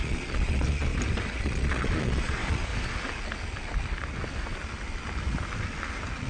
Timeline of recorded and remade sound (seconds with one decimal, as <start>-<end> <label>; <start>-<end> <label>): 0.0-0.9 remade; 0.9-1.4 recorded; 1.4-2.7 remade; 2.7-6.3 recorded